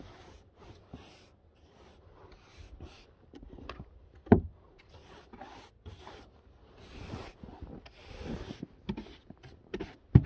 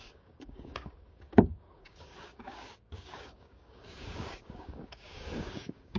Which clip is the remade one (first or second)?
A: second